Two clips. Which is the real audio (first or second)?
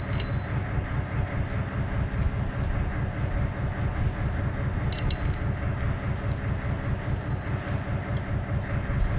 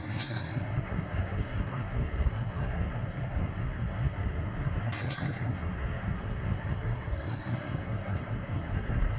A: first